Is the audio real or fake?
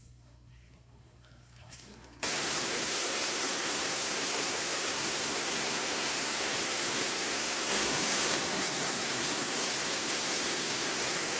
fake